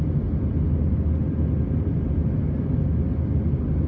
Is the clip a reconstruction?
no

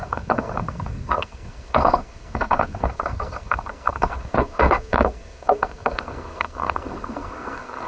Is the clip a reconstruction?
yes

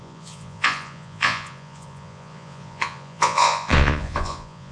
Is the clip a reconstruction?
yes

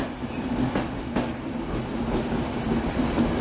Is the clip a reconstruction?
no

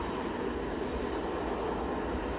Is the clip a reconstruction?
no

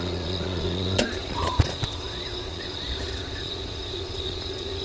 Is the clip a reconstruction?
yes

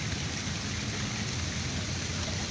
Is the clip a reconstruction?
no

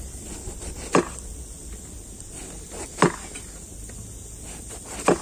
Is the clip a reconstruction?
no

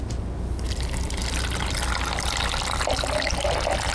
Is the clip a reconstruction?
no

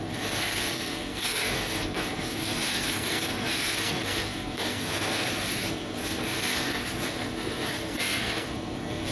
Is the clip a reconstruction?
yes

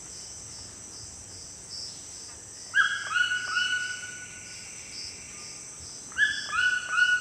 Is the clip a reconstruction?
no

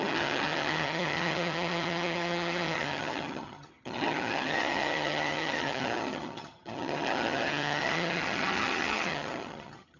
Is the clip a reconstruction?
yes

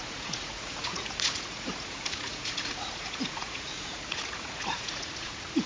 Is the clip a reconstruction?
yes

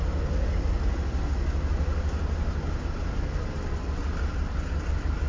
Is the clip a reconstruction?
no